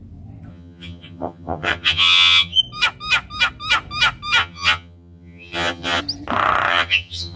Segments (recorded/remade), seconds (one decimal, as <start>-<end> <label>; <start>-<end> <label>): 0.0-0.5 recorded; 0.5-2.6 remade; 2.6-4.4 recorded; 4.4-6.0 remade; 6.0-6.7 recorded; 6.7-7.4 remade